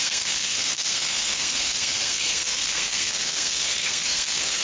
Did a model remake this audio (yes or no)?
yes